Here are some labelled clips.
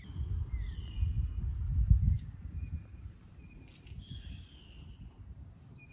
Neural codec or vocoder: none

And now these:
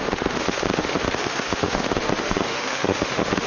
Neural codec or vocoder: autoencoder, DAC-VAE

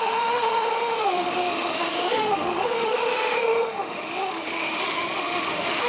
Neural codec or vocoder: autoencoder, DAC-VAE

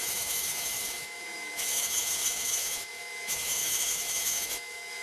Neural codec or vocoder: autoencoder, DAC-VAE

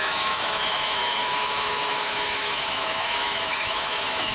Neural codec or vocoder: autoencoder, DAC-VAE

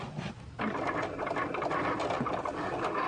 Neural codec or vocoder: none